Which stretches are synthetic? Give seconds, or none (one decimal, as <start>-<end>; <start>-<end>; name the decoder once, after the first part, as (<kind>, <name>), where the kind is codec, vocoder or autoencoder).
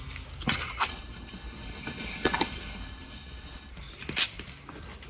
0.9-3.7 (codec, HILCodec)